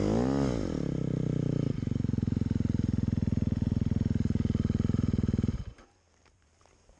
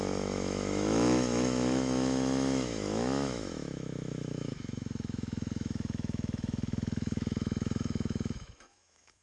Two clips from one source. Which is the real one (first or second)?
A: first